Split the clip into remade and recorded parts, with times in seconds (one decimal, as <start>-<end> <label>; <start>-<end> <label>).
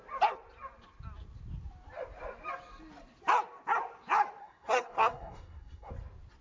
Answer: 0.0-4.4 recorded; 4.4-5.9 remade; 5.9-6.4 recorded